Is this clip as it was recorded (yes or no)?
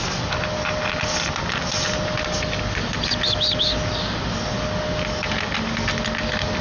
yes